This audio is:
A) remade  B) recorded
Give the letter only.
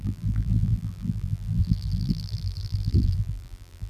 A